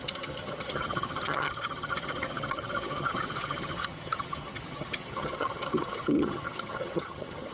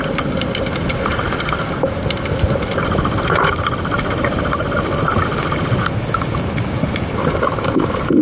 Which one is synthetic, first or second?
first